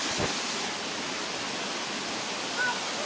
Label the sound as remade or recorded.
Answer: recorded